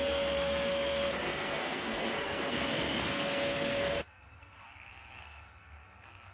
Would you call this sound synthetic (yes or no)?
yes